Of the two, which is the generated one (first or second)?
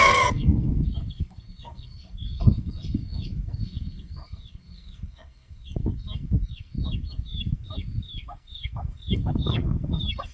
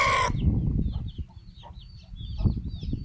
first